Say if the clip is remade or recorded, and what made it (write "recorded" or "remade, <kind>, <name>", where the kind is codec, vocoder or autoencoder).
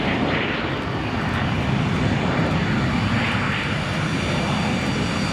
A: recorded